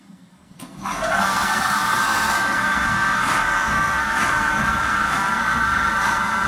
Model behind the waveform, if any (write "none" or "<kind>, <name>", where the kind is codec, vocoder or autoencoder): codec, SNAC